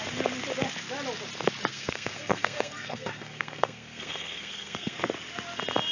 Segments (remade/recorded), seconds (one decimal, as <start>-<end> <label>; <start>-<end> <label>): 0.0-1.7 recorded; 1.7-5.0 remade; 5.0-5.9 recorded